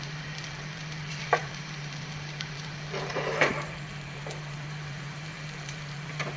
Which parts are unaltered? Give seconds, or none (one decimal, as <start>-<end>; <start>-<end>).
none